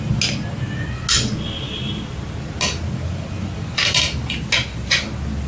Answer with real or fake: real